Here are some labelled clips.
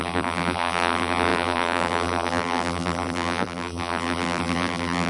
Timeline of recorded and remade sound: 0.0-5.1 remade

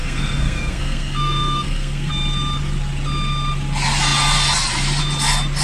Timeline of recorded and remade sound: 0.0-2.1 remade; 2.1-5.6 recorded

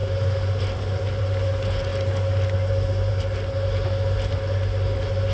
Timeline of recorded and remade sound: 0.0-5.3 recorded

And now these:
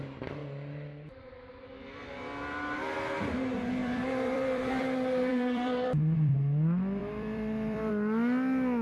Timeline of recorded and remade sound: 0.0-3.8 recorded; 3.8-4.8 remade; 4.8-5.3 recorded; 5.3-6.3 remade; 6.3-7.0 recorded; 7.0-7.9 remade; 7.9-8.8 recorded

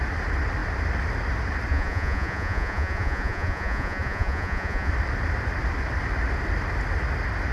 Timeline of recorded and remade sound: 0.0-1.7 recorded; 1.7-4.9 remade; 4.9-7.5 recorded

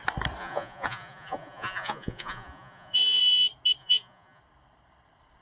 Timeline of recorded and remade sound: 0.0-0.4 recorded; 0.4-3.2 remade; 3.2-3.8 recorded; 3.8-4.4 remade; 4.4-5.4 recorded